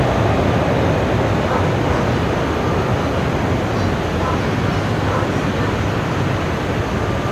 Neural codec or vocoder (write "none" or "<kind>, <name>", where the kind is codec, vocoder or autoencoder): none